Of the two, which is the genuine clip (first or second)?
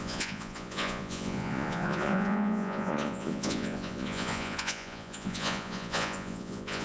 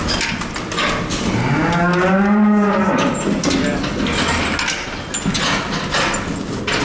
second